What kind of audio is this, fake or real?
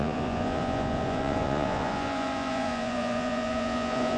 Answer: fake